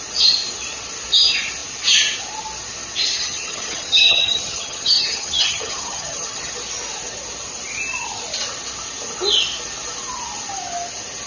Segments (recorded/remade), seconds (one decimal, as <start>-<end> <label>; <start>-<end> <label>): 0.0-3.2 recorded; 3.2-6.5 remade; 6.5-11.3 recorded